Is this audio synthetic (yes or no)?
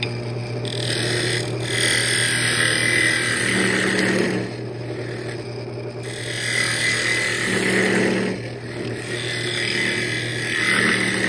no